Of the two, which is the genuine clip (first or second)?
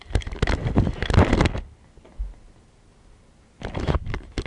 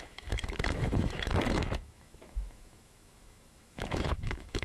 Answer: first